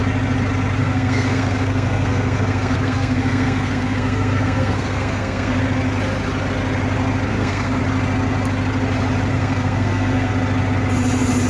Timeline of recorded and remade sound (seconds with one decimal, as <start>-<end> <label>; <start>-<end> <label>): 0.0-0.8 recorded; 0.8-5.6 remade; 5.6-7.3 recorded; 7.3-7.8 remade; 7.8-9.3 recorded; 9.3-10.3 remade; 10.3-11.5 recorded